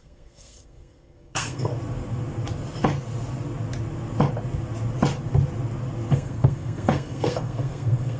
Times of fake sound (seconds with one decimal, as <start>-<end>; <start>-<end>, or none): 0.0-1.7; 6.1-8.2